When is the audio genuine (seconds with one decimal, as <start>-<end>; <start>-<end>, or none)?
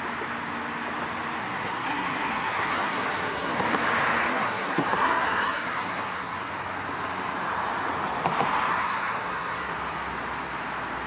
0.0-1.4; 3.5-4.3; 6.5-8.7; 9.7-11.1